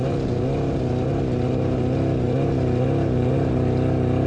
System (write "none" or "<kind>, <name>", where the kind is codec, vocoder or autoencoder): none